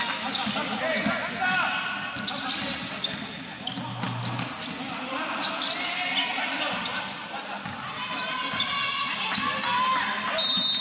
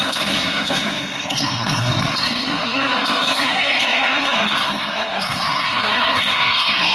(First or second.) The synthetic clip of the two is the second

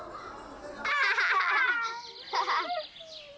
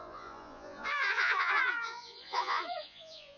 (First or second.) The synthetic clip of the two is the second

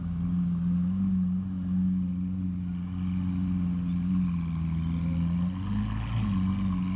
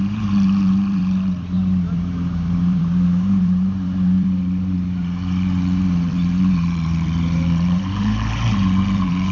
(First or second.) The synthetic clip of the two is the second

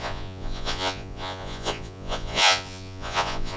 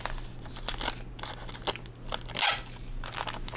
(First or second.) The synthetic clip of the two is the first